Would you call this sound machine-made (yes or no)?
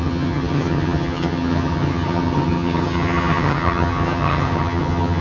yes